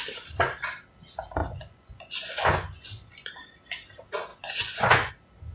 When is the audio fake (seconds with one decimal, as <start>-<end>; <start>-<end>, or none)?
1.4-3.3; 4.3-5.1